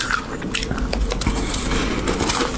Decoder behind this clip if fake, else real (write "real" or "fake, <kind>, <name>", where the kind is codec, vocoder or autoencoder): real